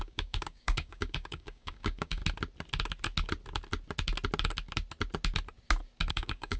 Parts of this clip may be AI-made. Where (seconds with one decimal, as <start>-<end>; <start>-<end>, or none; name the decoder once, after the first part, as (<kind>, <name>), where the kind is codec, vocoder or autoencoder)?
0.0-2.2 (codec, DAC); 6.1-6.6